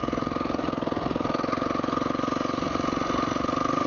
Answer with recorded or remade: recorded